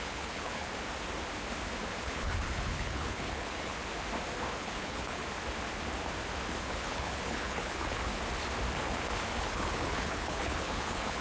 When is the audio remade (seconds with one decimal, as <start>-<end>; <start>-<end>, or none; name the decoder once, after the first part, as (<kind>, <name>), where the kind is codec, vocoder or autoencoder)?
0.0-0.7 (codec, HILCodec); 2.0-3.7; 4.6-5.2; 6.6-8.1; 9.4-11.2